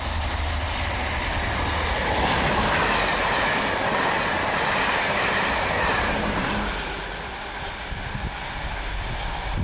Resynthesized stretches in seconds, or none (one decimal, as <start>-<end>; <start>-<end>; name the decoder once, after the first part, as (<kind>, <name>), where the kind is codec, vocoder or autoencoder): none